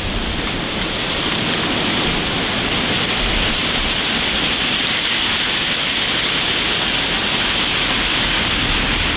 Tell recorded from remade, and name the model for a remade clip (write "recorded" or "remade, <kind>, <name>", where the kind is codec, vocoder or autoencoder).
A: recorded